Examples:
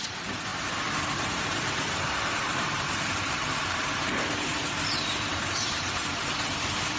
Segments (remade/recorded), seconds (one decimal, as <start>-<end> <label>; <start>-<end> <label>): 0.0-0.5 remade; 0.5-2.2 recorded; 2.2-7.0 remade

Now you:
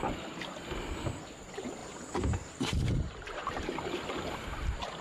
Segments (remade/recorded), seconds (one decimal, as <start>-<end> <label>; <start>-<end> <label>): 0.0-1.8 recorded; 1.8-5.0 remade

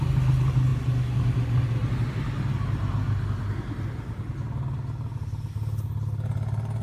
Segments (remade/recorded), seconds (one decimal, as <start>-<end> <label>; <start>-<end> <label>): 0.0-6.8 recorded

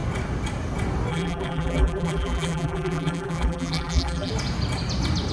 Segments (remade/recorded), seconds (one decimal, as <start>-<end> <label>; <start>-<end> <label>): 0.0-1.1 recorded; 1.1-4.3 remade; 4.3-5.3 recorded

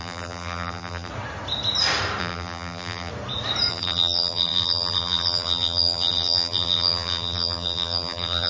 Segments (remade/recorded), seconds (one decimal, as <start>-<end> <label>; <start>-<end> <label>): 0.0-1.1 remade; 1.1-2.2 recorded; 2.2-3.1 remade; 3.1-3.7 recorded; 3.7-8.5 remade

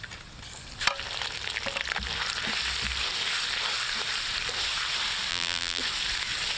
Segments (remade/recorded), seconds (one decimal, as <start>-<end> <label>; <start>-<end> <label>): 0.0-5.3 recorded; 5.3-5.8 remade; 5.8-6.6 recorded